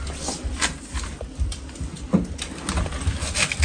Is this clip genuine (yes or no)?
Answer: yes